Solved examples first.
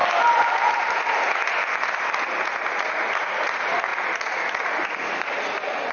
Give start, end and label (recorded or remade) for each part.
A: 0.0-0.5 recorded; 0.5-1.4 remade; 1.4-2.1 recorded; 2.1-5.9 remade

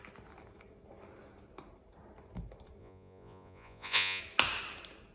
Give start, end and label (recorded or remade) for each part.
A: 0.0-2.8 recorded; 2.8-4.2 remade; 4.2-5.1 recorded

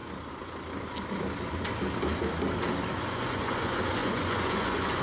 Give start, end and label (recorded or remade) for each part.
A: 0.0-2.9 recorded; 2.9-5.0 remade

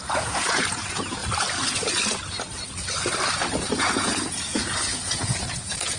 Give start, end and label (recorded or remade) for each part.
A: 0.0-1.2 remade; 1.2-3.8 recorded; 3.8-6.0 remade

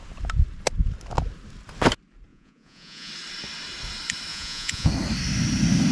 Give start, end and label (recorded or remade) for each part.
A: 0.0-2.3 recorded; 2.3-3.1 remade; 3.1-4.3 recorded; 4.3-4.9 remade; 4.9-5.9 recorded

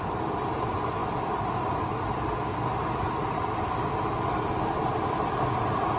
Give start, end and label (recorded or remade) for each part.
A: 0.0-6.0 recorded

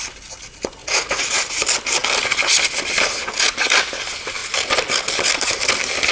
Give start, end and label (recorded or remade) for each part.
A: 0.0-0.8 recorded; 0.8-1.5 remade; 1.5-6.1 recorded

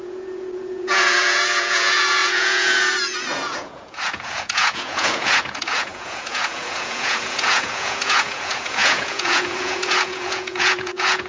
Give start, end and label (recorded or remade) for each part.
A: 0.0-11.3 remade